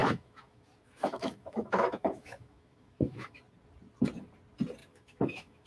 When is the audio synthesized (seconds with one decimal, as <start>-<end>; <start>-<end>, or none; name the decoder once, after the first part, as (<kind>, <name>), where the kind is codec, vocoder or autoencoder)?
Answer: 0.0-3.4 (autoencoder, DAC-VAE); 4.8-5.7